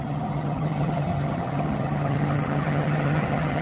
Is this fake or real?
fake